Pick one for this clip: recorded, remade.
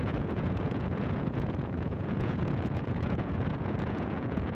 remade